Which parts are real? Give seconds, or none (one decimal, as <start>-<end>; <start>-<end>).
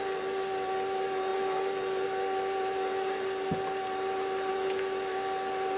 0.0-5.8